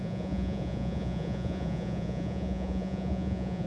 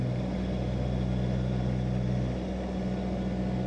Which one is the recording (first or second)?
second